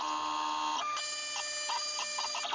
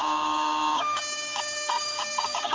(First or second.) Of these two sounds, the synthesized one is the second